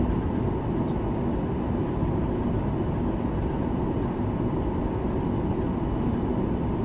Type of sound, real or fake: real